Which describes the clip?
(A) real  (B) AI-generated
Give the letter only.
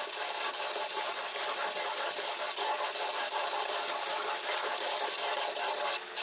A